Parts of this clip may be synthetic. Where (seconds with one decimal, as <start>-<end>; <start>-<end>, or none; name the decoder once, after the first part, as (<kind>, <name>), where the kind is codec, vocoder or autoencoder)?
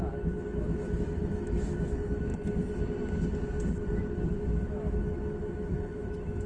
0.0-2.3 (autoencoder, DAC-VAE); 4.1-6.5